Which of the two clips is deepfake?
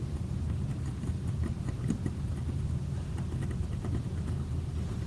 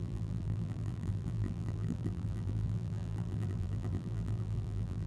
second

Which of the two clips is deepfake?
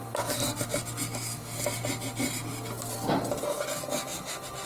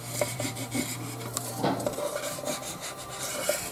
second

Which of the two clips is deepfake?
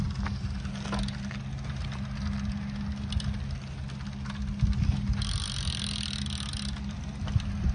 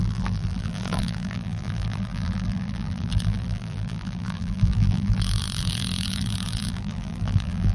second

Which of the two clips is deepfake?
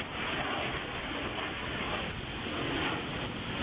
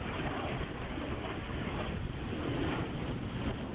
second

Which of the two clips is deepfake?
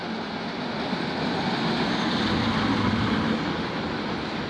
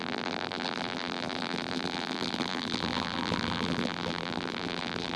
second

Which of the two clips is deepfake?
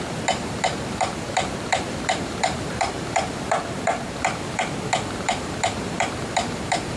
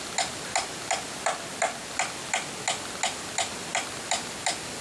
first